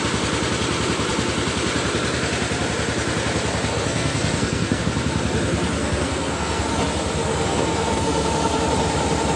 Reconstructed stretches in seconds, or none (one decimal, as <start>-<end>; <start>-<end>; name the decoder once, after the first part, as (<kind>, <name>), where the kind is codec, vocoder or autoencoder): 3.7-4.8 (codec, SNAC); 5.8-6.8; 7.3-8.6